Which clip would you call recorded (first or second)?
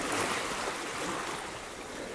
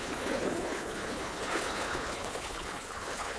first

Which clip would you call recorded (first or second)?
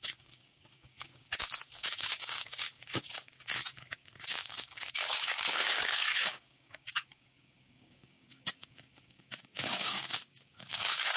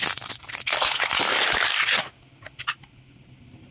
second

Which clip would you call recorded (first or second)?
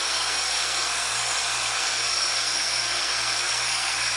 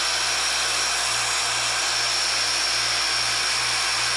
second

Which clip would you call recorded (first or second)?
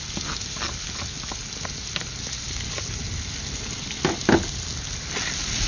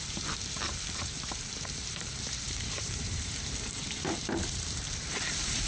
first